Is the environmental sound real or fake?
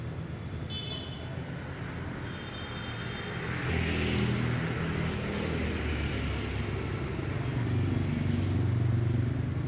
real